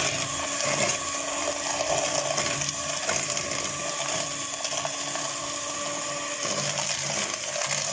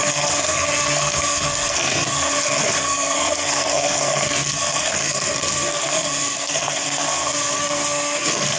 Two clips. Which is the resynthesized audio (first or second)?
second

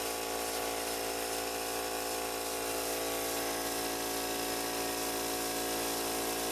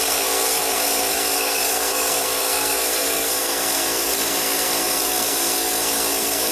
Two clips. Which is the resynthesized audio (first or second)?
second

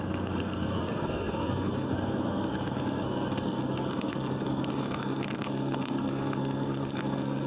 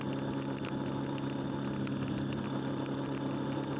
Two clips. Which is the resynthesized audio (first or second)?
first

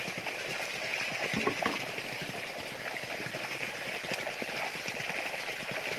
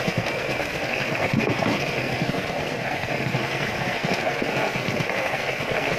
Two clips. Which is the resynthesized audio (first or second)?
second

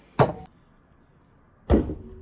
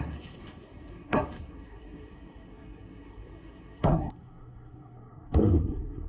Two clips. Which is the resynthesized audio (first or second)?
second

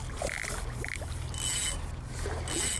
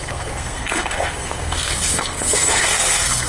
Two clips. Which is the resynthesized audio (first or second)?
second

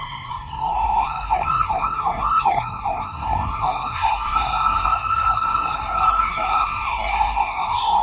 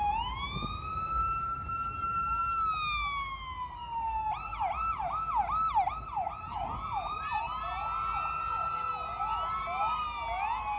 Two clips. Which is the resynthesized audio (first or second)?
first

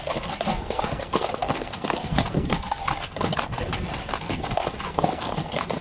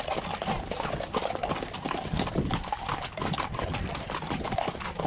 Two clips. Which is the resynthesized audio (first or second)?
first